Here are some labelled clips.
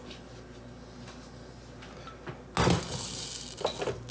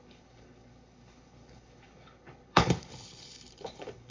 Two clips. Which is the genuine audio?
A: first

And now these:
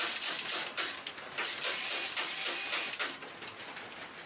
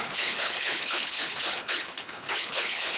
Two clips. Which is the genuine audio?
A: first